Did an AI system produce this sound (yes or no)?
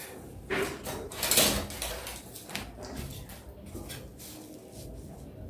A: no